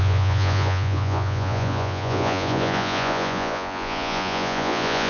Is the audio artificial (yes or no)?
yes